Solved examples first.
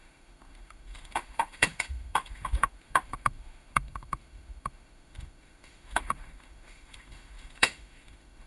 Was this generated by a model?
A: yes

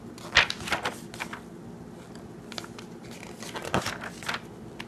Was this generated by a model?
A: no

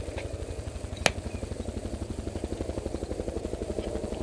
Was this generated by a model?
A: no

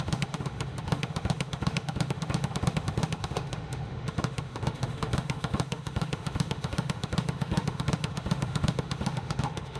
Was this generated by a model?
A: yes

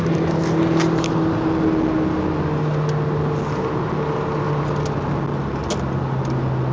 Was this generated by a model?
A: no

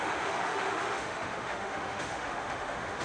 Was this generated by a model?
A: yes